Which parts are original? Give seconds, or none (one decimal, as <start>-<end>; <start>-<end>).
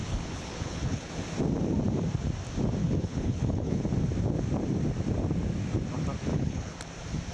1.1-2.8; 3.8-6.3; 6.8-7.3